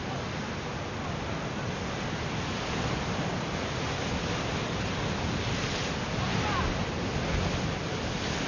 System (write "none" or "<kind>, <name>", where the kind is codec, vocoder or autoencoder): none